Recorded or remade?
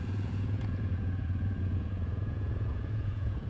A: remade